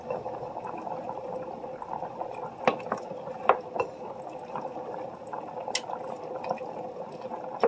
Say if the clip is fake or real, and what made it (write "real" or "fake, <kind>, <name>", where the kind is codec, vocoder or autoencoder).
real